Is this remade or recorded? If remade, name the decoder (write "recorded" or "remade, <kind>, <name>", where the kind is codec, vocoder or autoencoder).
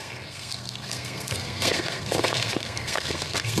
remade, codec, SNAC